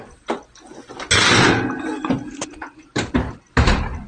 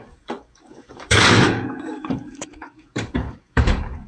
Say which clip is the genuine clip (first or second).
first